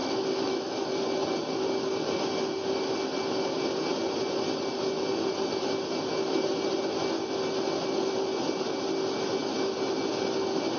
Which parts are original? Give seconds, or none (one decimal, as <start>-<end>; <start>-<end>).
0.9-10.8